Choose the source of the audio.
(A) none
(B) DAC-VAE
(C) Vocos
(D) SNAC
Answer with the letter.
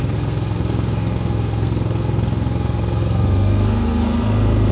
D